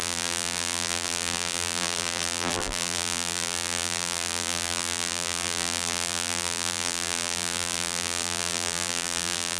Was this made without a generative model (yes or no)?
no